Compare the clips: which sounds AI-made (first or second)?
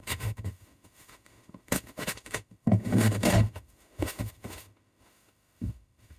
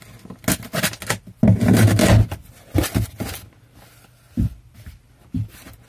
first